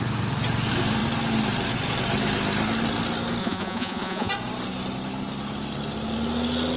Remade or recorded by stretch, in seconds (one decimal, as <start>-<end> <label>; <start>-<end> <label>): 0.0-3.4 recorded; 3.4-4.3 remade; 4.3-6.8 recorded